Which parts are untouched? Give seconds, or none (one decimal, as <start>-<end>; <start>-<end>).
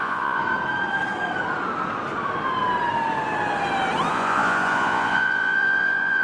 0.4-4.1